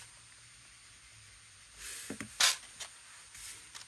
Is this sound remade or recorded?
recorded